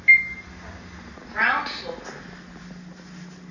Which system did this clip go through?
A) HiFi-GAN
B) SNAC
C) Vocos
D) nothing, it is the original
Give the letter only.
D